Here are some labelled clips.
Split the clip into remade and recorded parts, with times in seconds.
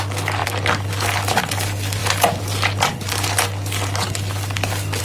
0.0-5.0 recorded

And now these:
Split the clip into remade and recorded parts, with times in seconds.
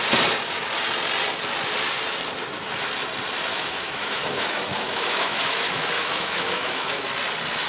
0.0-3.5 recorded; 3.5-7.0 remade; 7.0-7.7 recorded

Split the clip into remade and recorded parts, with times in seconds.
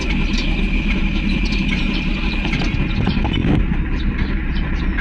0.0-5.0 recorded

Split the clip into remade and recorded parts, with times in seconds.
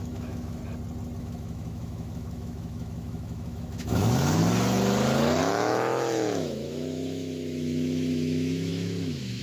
0.0-0.6 remade; 0.6-1.2 recorded; 1.2-4.4 remade; 4.4-5.4 recorded; 5.4-9.4 remade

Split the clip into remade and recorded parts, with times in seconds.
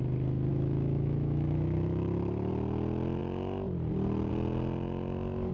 0.0-0.5 recorded; 0.5-2.5 remade; 2.5-5.5 recorded